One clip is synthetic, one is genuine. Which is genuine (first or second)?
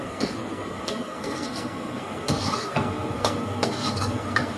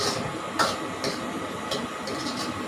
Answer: second